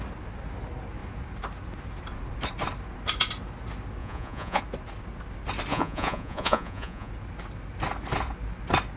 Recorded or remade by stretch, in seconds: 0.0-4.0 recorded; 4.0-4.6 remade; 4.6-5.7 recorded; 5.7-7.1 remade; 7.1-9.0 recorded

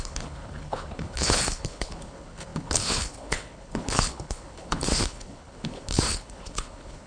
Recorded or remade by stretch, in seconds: 0.0-7.1 remade

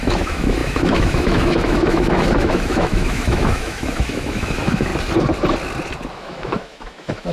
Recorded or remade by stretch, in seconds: 0.0-4.9 remade; 4.9-6.1 recorded; 6.1-7.3 remade

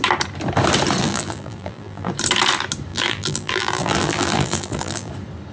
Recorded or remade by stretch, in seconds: 0.0-1.0 recorded; 1.0-2.1 remade; 2.1-2.9 recorded; 2.9-5.1 remade; 5.1-5.5 recorded

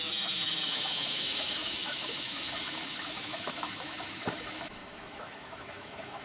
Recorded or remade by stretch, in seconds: 0.0-6.2 remade